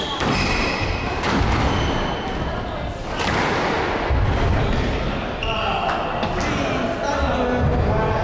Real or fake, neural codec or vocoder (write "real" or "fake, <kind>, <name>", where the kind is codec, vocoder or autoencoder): real